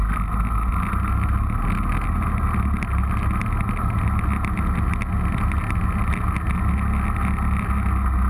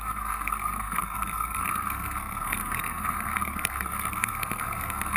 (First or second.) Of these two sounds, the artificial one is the second